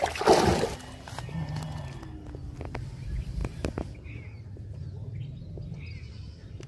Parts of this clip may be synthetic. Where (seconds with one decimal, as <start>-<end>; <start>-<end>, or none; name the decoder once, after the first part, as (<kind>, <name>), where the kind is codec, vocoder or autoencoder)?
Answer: none